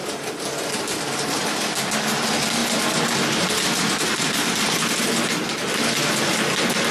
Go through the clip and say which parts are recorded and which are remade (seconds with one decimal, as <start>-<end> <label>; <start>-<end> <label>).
0.0-6.9 recorded